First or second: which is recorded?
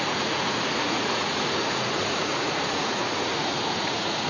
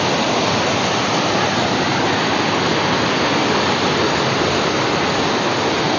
second